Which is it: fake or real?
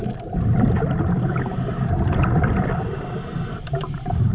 real